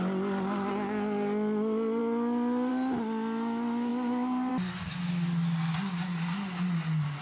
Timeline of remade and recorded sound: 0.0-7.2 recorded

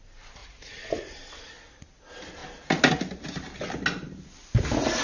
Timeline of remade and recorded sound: 0.0-0.4 recorded; 0.4-1.4 remade; 1.4-5.0 recorded